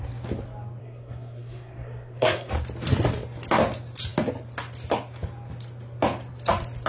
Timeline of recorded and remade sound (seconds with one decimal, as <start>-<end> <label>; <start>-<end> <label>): 0.0-0.8 recorded; 0.8-2.5 remade; 2.5-6.9 recorded